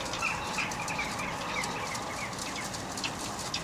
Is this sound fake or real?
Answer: real